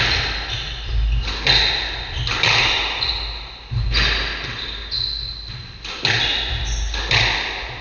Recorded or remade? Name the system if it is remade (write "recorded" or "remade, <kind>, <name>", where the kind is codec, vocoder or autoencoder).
recorded